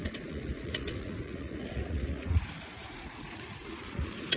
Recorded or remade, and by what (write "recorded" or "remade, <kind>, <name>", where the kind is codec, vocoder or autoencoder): remade, vocoder, Vocos